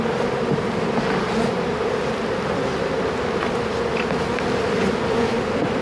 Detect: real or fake real